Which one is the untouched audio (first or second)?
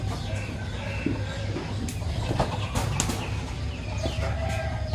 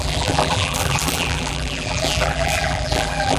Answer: first